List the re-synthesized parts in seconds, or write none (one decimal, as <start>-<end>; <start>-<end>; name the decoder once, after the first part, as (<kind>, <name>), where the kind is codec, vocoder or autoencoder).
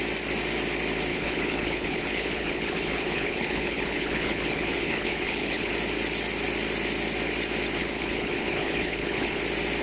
1.1-5.7 (codec, HILCodec); 7.8-9.4